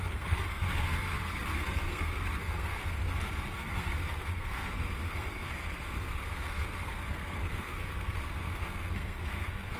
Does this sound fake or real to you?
fake